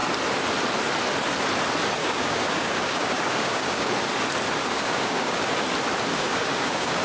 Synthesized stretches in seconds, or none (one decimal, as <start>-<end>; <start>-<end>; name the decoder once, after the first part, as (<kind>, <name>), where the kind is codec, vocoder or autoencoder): 2.0-3.9 (codec, DAC); 4.7-5.5; 6.1-7.0

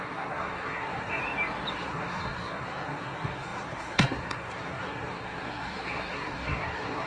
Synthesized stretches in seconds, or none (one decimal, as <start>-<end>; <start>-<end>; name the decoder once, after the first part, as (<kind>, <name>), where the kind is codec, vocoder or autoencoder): 0.0-1.2 (codec, SNAC); 1.7-7.1

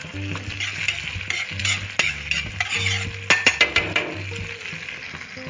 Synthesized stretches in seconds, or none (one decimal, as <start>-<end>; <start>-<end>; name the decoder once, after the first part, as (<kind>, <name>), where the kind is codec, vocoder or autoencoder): none

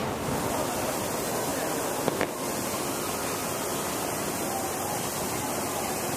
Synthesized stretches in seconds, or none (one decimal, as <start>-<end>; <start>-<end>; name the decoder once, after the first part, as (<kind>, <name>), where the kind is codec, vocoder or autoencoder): none